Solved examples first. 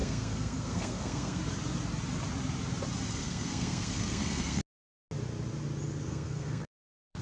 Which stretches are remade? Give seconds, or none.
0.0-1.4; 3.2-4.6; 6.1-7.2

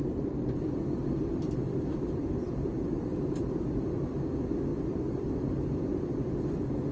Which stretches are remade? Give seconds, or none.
none

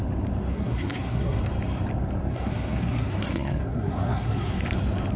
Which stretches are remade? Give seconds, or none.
0.5-1.4; 2.3-4.6

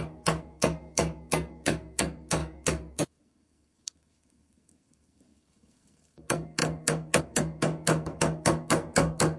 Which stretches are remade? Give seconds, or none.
0.0-9.4

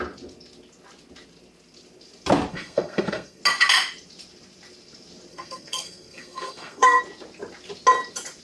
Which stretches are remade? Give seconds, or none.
2.5-3.4; 5.3-7.0